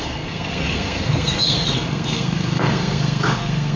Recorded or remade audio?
remade